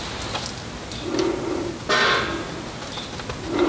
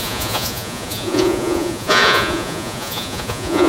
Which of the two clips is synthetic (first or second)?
second